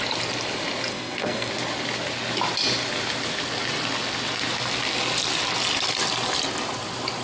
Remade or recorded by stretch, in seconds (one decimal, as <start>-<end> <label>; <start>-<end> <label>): 0.0-0.9 recorded; 0.9-1.5 remade; 1.5-7.2 recorded